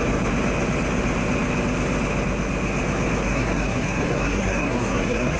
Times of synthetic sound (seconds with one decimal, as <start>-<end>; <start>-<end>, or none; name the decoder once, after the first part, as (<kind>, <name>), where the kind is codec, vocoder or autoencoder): 3.2-5.4 (codec, SNAC)